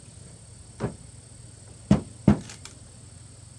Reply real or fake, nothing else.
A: real